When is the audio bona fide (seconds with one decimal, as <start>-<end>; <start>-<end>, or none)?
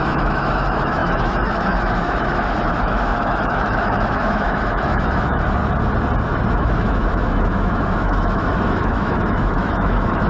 5.6-6.5